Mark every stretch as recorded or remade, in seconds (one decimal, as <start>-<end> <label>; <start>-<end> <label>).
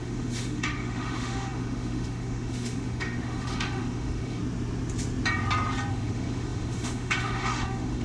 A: 0.0-4.4 remade; 4.4-5.9 recorded; 5.9-8.0 remade